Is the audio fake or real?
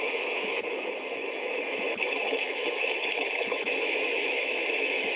fake